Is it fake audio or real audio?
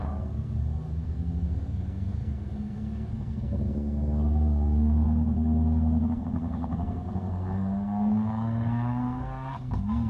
fake